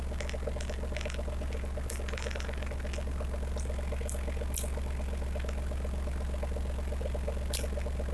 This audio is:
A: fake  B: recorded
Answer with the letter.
B